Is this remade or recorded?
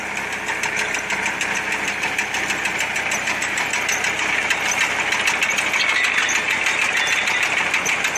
recorded